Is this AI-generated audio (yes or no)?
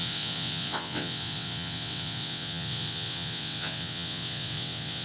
yes